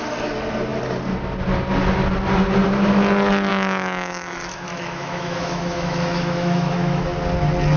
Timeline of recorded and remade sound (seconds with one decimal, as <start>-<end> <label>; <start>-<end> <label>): 0.0-3.5 recorded; 3.5-7.0 remade; 7.0-7.8 recorded